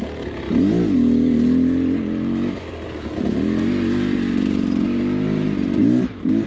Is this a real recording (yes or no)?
yes